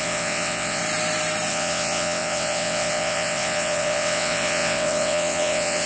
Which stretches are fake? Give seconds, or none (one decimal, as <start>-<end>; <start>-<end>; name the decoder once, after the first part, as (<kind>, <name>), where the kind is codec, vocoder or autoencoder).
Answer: 0.0-0.8 (vocoder, WaveNeXt); 1.5-5.9